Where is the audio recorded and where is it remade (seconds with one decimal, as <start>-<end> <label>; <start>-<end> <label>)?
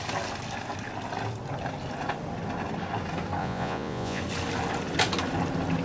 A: 0.0-3.4 recorded; 3.4-4.2 remade; 4.2-5.8 recorded